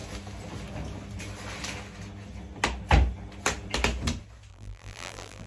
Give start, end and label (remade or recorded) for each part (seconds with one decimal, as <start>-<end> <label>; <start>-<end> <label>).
0.0-4.5 recorded; 4.5-5.5 remade

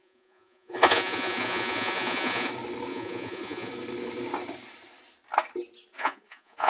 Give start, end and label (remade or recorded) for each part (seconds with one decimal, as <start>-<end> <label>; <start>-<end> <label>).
0.0-2.5 remade; 2.5-2.9 recorded; 2.9-3.7 remade; 3.7-5.9 recorded; 5.9-6.7 remade